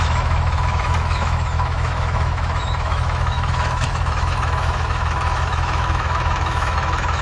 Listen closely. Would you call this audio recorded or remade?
remade